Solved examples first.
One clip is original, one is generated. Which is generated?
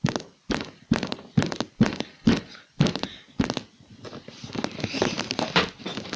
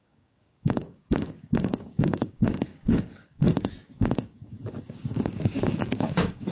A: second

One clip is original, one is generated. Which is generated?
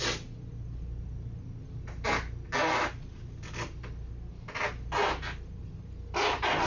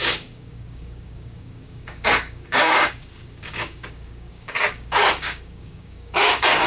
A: second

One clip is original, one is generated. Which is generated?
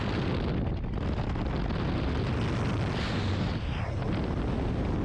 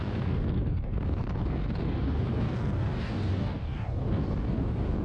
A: second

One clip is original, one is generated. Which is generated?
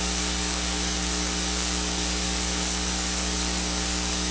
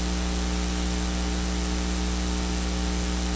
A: first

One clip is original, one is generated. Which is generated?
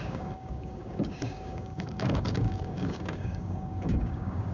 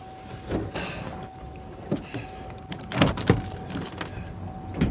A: first